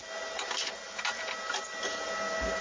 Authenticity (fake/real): real